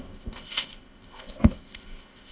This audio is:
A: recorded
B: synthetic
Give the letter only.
B